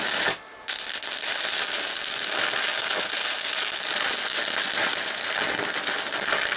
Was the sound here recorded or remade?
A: recorded